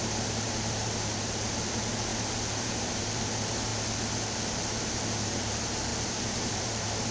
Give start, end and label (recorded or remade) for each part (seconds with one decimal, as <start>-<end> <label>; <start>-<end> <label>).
0.0-2.1 remade; 2.1-2.6 recorded; 2.6-3.7 remade; 3.7-4.8 recorded; 4.8-7.1 remade